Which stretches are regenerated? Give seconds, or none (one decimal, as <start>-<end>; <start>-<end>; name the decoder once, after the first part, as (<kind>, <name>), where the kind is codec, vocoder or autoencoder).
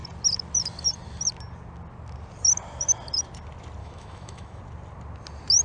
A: 3.8-4.6 (autoencoder, DAC-VAE)